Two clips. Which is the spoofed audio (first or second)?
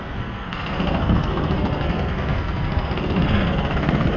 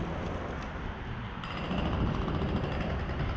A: first